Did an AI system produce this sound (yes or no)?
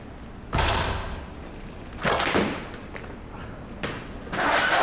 no